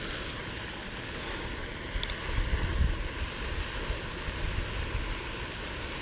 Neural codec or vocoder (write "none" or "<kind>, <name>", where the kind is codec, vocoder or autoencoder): none